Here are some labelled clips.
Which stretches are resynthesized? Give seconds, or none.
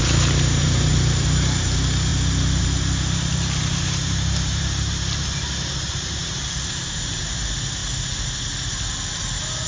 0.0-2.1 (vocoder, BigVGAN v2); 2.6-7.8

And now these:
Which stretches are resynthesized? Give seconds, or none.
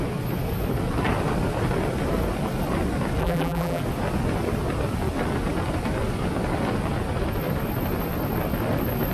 3.2-3.8 (vocoder, BigVGAN v2)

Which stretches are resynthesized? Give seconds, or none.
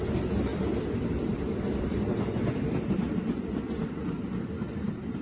none